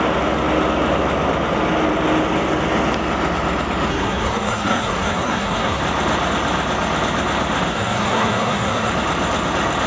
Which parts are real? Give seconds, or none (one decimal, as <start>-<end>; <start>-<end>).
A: 0.0-3.9; 5.8-7.7; 8.9-9.9